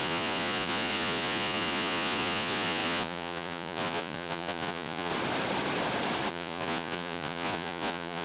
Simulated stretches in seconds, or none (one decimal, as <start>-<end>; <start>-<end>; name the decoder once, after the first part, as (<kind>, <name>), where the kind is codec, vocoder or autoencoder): 0.0-5.1 (vocoder, Vocos); 6.3-8.2